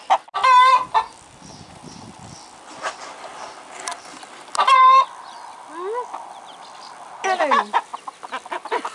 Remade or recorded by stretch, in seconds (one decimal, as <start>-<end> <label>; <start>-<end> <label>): 0.0-3.3 recorded; 3.3-4.8 remade; 4.8-7.9 recorded; 7.9-8.9 remade